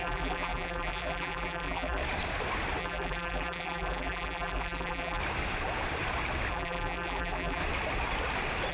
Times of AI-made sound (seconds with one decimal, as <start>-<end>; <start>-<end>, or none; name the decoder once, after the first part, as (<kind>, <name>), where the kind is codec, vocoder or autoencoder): 0.0-2.0 (vocoder, BigVGAN v2); 2.8-5.2; 6.5-7.6